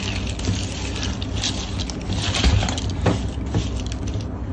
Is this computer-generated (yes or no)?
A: no